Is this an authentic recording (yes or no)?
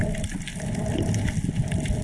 yes